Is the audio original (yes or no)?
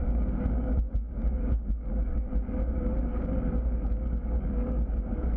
no